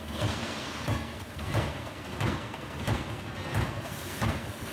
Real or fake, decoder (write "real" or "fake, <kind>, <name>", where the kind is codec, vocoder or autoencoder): fake, codec, SNAC